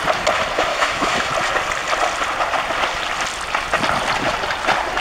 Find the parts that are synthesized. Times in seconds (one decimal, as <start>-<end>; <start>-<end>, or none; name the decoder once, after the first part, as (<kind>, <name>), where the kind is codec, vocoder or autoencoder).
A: 0.7-1.3 (autoencoder, DAC-VAE)